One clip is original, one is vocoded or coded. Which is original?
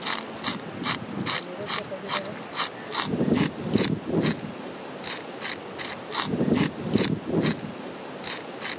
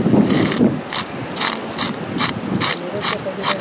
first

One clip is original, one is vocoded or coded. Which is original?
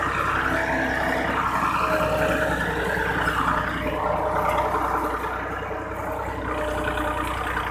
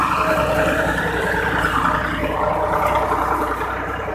first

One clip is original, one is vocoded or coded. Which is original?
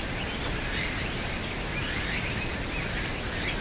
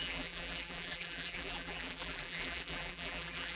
first